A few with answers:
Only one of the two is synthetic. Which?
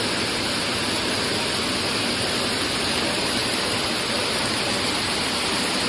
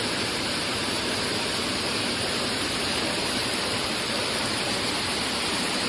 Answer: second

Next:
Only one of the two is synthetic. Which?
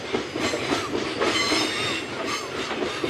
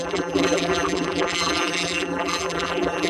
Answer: second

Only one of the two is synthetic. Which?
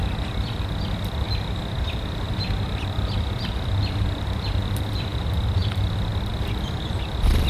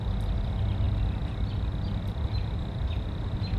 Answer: first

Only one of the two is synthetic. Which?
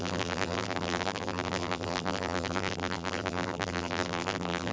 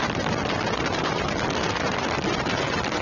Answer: first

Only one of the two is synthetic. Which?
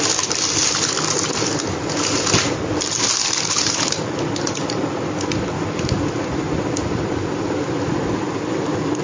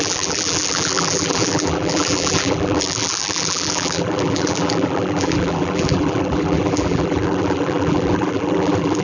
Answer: second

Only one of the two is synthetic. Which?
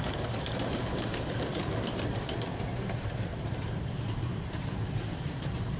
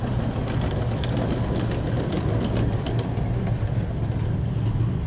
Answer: first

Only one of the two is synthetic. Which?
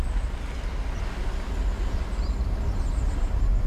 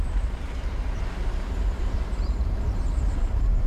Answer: second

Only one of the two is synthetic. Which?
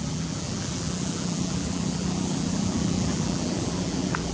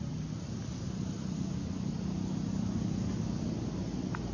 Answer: first